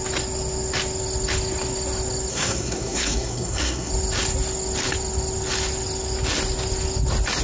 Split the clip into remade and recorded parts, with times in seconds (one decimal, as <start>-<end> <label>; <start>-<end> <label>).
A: 0.0-2.3 recorded; 2.3-3.9 remade; 3.9-7.4 recorded